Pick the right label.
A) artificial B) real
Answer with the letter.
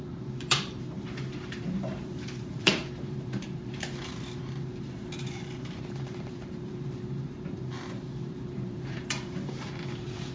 A